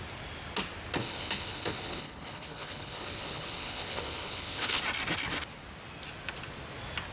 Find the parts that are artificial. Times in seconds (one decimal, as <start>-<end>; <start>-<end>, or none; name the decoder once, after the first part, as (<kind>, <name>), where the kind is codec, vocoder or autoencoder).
1.0-4.8 (codec, HILCodec)